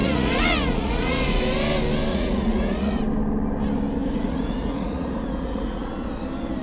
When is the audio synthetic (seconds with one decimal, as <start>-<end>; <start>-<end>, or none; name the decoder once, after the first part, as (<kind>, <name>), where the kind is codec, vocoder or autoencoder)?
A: 0.0-1.4 (vocoder, Vocos); 2.1-3.0; 4.0-5.9